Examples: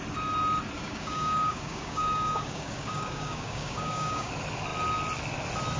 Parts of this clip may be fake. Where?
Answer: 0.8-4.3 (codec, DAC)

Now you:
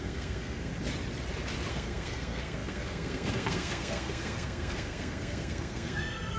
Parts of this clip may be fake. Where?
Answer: 0.0-0.7 (codec, SNAC); 1.7-6.4